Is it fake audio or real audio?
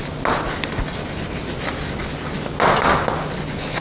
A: real